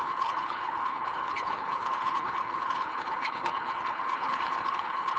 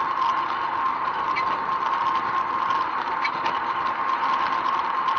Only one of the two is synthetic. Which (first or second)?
first